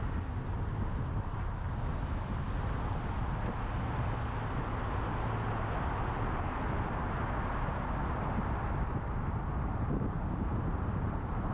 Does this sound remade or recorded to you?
recorded